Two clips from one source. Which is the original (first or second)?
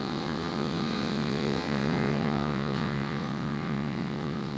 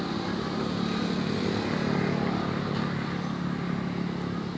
second